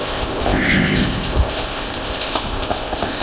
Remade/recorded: remade